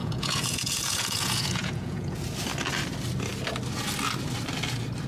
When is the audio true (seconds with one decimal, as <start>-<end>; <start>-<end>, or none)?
2.2-5.1